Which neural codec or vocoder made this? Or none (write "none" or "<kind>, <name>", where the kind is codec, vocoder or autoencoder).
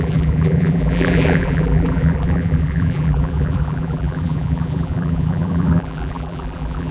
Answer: vocoder, BigVGAN v2